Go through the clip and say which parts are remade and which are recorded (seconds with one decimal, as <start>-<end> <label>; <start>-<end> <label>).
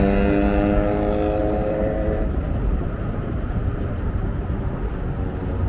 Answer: 0.0-1.4 recorded; 1.4-4.8 remade; 4.8-5.7 recorded